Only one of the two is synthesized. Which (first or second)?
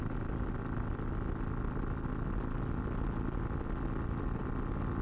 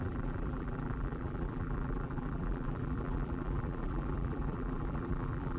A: second